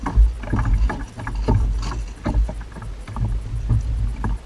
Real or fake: real